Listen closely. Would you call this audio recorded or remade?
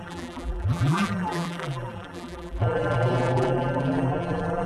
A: remade